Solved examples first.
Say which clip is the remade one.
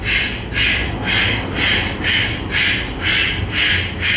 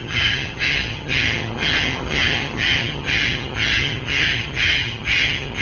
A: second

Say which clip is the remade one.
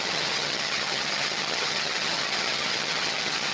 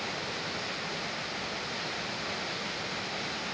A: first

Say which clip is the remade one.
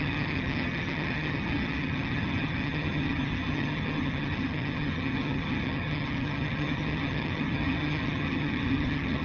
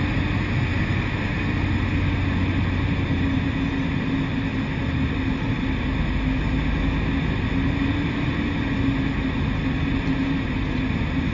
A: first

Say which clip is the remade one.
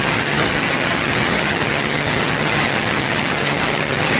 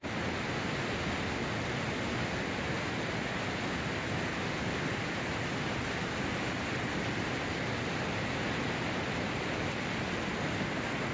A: first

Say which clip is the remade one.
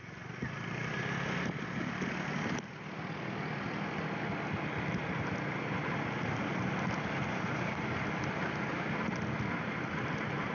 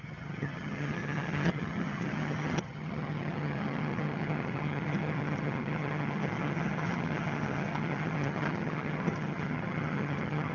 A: second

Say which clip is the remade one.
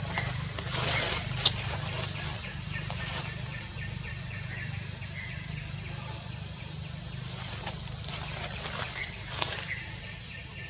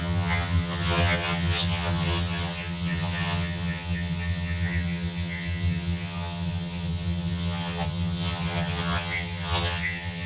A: second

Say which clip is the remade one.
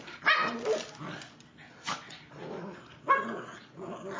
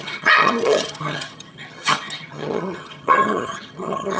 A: second